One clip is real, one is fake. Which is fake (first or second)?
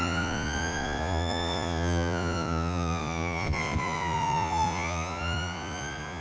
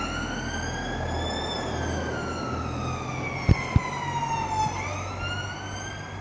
first